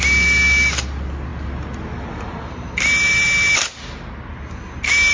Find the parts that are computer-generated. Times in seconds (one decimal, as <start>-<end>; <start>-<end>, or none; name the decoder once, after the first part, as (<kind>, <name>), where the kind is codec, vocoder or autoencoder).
none